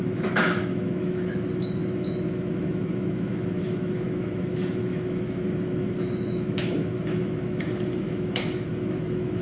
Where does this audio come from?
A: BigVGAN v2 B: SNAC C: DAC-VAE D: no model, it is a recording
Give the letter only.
C